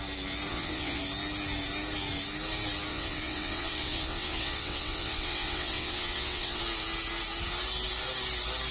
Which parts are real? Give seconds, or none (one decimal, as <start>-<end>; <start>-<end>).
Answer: 0.0-0.5; 1.0-2.9; 6.6-8.7